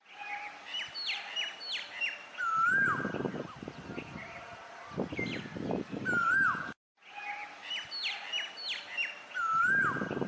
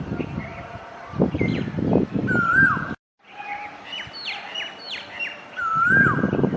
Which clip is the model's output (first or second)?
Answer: second